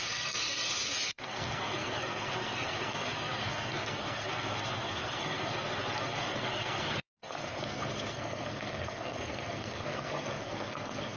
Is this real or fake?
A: fake